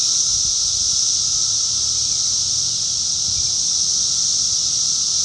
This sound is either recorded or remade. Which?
recorded